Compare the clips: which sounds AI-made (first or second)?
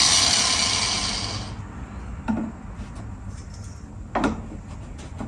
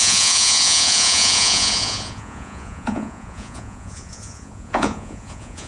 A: second